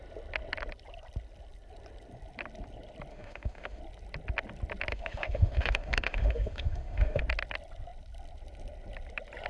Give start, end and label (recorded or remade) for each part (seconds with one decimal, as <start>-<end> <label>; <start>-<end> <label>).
0.0-3.1 recorded; 3.1-3.8 remade; 3.8-4.9 recorded; 4.9-7.2 remade; 7.2-9.5 recorded